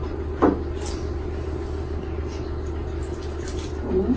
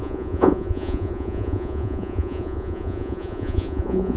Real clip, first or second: first